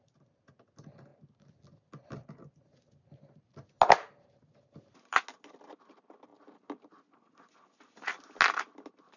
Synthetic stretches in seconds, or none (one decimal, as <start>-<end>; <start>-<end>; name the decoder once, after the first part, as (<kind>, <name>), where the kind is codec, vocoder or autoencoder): none